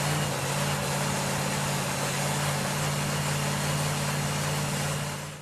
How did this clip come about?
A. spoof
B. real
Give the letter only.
B